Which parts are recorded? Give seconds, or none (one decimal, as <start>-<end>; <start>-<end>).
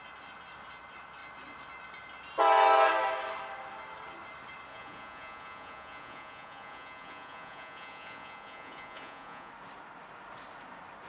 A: 0.0-4.7; 9.5-11.1